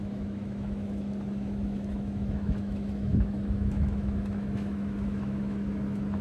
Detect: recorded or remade remade